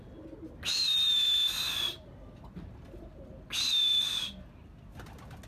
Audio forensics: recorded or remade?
recorded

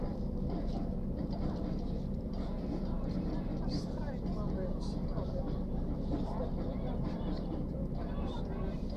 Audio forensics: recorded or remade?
remade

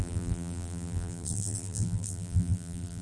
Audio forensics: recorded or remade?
remade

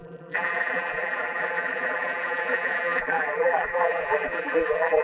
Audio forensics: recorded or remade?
remade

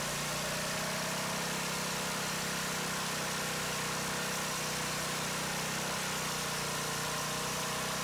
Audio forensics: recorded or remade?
recorded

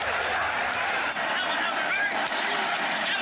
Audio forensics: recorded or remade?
remade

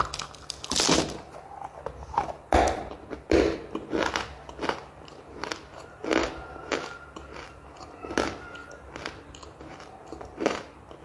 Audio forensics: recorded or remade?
recorded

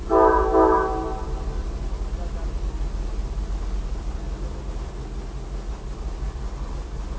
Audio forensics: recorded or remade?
recorded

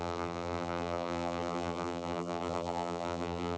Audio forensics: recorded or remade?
remade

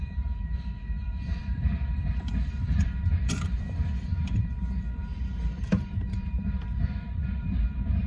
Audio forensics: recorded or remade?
remade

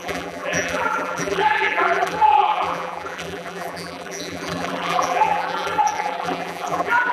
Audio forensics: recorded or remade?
remade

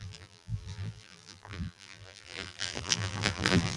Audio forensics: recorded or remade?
remade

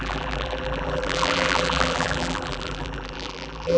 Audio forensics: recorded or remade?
remade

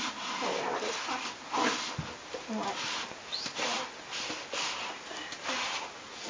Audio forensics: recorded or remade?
recorded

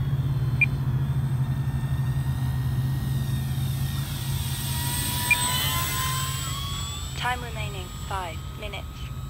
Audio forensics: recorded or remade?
recorded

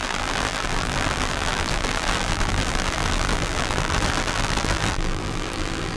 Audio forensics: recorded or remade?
remade